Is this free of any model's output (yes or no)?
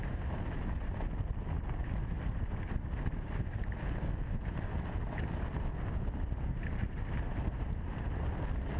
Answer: yes